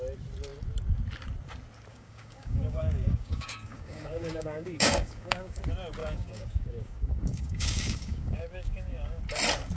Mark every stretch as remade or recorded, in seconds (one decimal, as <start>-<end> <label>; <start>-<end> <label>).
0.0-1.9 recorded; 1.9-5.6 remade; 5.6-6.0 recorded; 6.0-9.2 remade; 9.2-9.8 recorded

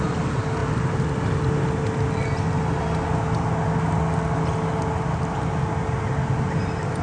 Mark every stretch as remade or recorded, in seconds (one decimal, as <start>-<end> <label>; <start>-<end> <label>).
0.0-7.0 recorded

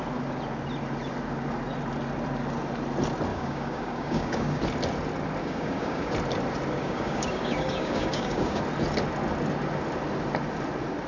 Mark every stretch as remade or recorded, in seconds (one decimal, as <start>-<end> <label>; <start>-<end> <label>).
0.0-3.3 recorded; 3.3-4.6 remade; 4.6-5.4 recorded; 5.4-6.1 remade; 6.1-6.8 recorded; 6.8-8.6 remade; 8.6-11.1 recorded

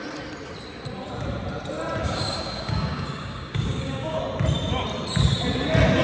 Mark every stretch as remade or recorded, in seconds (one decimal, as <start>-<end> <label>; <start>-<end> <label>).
0.0-2.0 recorded; 2.0-4.2 remade; 4.2-6.0 recorded